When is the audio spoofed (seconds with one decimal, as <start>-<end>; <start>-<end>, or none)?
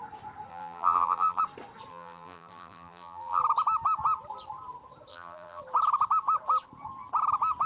0.5-1.4; 1.9-3.4; 5.1-5.6